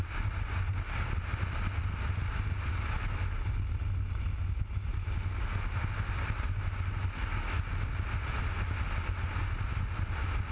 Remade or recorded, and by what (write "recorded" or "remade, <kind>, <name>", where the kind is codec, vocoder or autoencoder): recorded